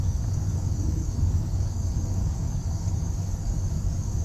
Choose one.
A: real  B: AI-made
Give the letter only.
B